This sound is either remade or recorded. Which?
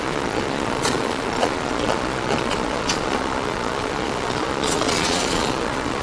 remade